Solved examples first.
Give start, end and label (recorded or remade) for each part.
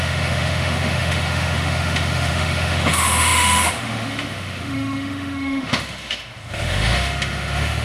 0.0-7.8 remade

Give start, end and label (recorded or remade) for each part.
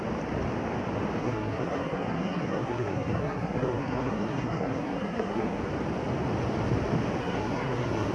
0.0-1.2 recorded; 1.2-5.6 remade; 5.6-7.2 recorded; 7.2-8.1 remade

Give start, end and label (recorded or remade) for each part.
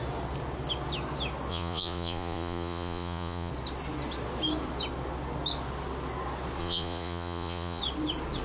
0.0-1.5 recorded; 1.5-3.5 remade; 3.5-6.6 recorded; 6.6-7.8 remade; 7.8-8.4 recorded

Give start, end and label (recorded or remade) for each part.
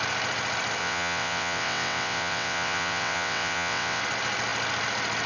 0.0-0.8 recorded; 0.8-4.0 remade; 4.0-5.3 recorded